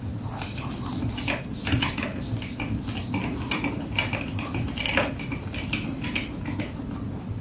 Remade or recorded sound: recorded